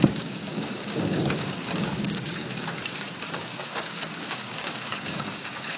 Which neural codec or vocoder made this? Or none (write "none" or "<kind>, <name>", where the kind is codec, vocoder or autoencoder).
codec, DAC